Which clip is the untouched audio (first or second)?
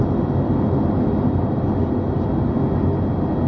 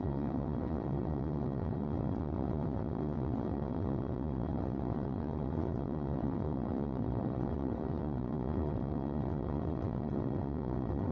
first